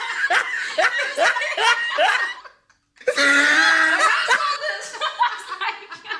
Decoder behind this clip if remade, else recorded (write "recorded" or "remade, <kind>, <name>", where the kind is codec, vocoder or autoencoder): recorded